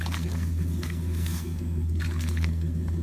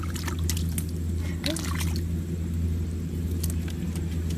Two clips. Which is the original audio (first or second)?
second